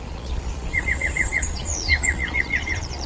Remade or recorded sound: remade